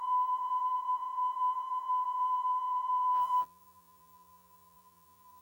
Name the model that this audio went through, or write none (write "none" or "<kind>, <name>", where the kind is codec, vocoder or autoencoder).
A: vocoder, BigVGAN v2